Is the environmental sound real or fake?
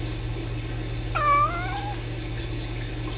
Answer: real